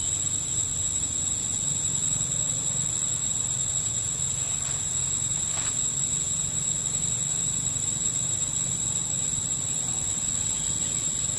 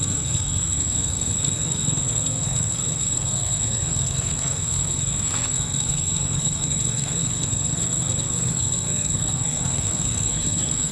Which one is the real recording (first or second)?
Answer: first